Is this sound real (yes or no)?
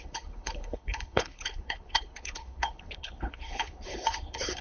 no